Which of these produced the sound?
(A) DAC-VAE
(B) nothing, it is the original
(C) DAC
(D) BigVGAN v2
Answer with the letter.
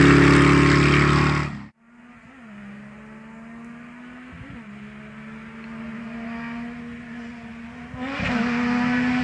B